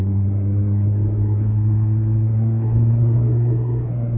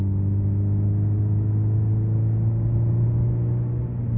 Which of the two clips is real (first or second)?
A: second